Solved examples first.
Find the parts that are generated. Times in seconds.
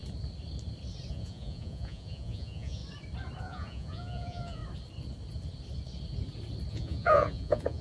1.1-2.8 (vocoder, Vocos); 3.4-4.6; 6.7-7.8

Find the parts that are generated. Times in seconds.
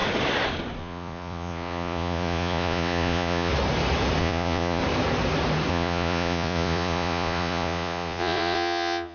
0.8-3.5 (vocoder, Vocos); 4.2-4.8; 5.7-9.1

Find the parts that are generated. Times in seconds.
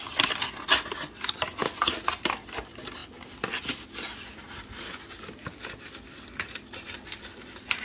none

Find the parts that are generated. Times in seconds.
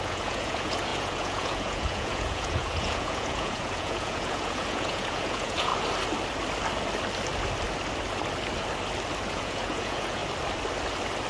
0.0-5.7 (vocoder, Vocos); 9.3-10.2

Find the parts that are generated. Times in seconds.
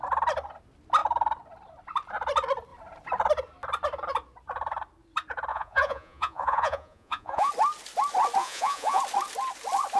5.5-7.5 (vocoder, Vocos); 8.4-9.0